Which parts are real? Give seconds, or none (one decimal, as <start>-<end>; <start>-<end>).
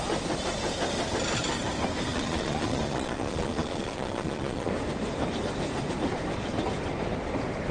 0.0-2.1; 4.7-7.7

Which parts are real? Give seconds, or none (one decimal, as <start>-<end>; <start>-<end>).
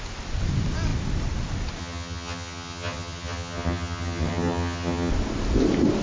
0.0-1.8; 5.1-6.0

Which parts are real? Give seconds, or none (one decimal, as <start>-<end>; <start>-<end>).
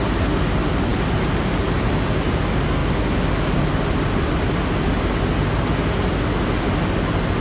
0.0-7.4